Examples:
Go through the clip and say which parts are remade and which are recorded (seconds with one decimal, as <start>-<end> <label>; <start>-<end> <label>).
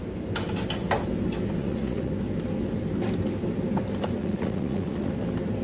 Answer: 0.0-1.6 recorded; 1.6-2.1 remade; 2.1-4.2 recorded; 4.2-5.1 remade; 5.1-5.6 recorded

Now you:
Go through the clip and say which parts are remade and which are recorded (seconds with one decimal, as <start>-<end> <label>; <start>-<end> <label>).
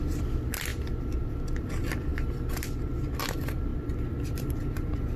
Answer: 0.0-0.7 remade; 0.7-1.3 recorded; 1.3-2.1 remade; 2.1-3.3 recorded; 3.3-5.2 remade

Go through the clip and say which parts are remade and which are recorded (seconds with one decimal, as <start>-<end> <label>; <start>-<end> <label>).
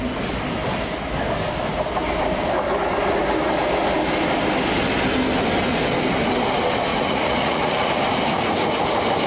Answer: 0.0-6.9 recorded; 6.9-7.9 remade; 7.9-9.3 recorded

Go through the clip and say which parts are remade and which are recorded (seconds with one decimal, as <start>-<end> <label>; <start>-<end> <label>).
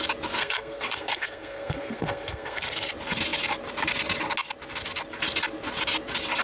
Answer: 0.0-0.4 recorded; 0.4-2.9 remade; 2.9-6.4 recorded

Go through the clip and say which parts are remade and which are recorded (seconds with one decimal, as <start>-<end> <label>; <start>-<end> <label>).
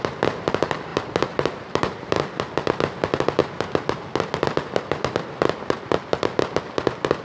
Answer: 0.0-0.9 recorded; 0.9-2.2 remade; 2.2-7.2 recorded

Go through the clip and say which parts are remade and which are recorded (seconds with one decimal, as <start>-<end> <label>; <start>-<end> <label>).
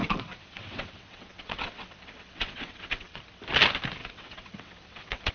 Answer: 0.0-3.2 remade; 3.2-4.0 recorded; 4.0-5.3 remade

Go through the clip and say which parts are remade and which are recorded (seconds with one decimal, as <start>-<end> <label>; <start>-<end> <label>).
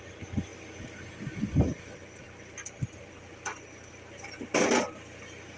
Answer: 0.0-5.6 recorded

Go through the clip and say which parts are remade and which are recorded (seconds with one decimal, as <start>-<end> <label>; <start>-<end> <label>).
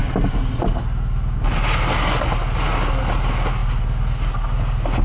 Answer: 0.0-5.0 recorded